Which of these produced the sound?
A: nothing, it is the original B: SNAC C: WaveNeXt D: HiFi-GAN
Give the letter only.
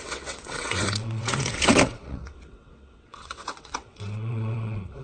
C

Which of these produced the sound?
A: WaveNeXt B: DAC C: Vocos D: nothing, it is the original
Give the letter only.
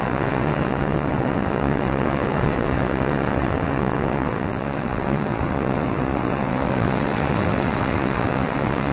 A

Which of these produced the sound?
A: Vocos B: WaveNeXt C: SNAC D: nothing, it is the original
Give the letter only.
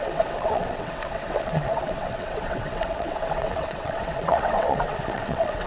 B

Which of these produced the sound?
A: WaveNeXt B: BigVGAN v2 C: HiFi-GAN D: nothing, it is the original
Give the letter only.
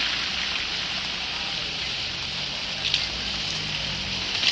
D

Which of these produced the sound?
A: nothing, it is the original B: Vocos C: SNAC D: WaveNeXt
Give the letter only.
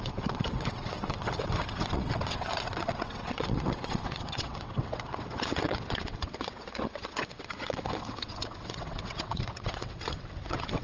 D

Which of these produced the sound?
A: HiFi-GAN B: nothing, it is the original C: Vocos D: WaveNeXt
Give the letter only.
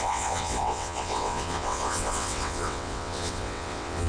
D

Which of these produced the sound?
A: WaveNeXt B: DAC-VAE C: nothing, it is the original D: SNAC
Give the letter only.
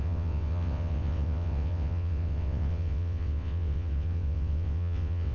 A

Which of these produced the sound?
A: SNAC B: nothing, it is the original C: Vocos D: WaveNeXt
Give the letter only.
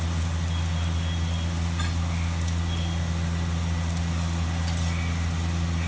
B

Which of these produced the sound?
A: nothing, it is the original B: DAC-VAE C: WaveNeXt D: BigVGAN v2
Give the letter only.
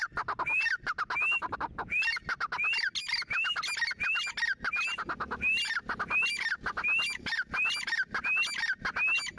A